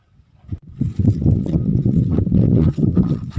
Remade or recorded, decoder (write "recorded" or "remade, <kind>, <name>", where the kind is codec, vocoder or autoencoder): remade, vocoder, WaveNeXt